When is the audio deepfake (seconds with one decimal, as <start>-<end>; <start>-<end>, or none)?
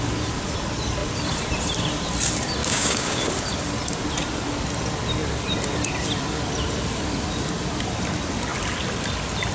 2.6-3.2